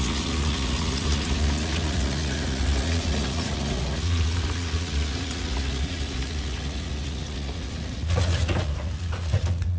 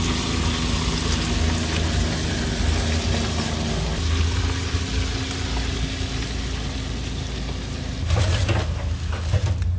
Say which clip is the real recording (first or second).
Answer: second